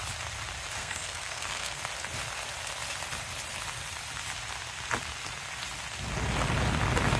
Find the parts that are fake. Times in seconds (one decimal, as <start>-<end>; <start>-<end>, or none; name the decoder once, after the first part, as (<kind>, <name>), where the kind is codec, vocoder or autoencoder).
0.8-1.8 (codec, SNAC)